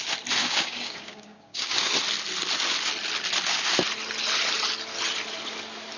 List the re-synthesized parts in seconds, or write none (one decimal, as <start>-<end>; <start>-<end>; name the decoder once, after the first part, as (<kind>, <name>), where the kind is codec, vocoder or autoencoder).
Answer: 0.4-1.9 (codec, DAC)